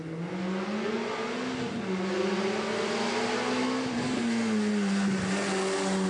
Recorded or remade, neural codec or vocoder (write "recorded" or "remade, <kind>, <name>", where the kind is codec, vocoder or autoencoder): recorded